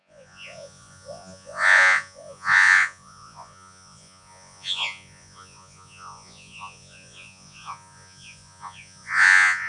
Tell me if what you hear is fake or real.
fake